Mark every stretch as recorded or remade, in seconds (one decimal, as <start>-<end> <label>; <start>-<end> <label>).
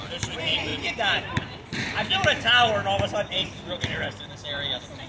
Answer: 0.0-5.1 recorded